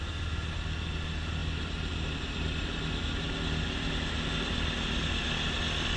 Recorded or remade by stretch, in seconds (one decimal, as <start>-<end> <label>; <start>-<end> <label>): 0.0-6.0 recorded